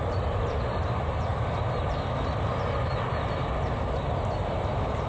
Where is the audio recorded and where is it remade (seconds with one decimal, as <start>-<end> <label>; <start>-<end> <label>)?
0.0-1.3 remade; 1.3-4.4 recorded; 4.4-5.1 remade